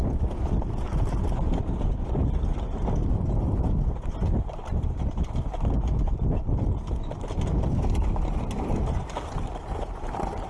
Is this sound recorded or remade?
remade